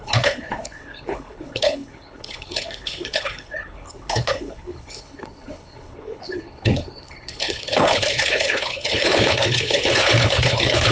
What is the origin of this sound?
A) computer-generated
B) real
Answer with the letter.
A